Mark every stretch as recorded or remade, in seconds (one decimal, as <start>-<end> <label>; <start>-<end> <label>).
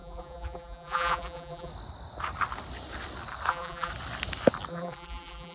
0.0-1.7 remade; 1.7-3.5 recorded; 3.5-3.9 remade; 3.9-4.7 recorded; 4.7-5.5 remade